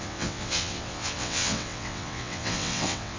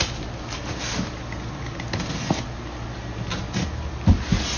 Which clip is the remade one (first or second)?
first